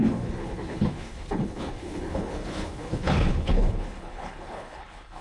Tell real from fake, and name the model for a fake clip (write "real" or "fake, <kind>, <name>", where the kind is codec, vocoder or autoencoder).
fake, codec, HILCodec